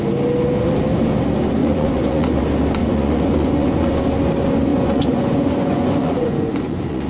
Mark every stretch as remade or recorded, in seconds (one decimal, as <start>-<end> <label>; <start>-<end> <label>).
0.0-1.6 recorded; 1.6-2.4 remade; 2.4-2.8 recorded; 2.8-3.9 remade; 3.9-4.7 recorded; 4.7-7.1 remade